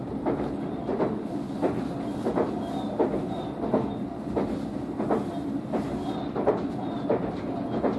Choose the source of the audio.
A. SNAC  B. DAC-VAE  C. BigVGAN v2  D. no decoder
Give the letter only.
D